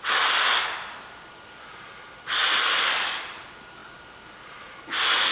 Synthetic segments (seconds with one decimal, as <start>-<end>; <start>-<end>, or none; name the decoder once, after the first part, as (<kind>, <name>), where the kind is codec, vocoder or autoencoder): 0.0-2.4 (vocoder, BigVGAN v2); 3.2-3.8